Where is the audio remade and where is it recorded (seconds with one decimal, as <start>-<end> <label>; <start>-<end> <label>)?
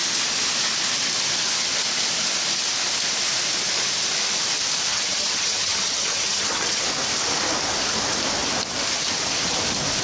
0.0-4.9 recorded; 4.9-6.8 remade; 6.8-10.0 recorded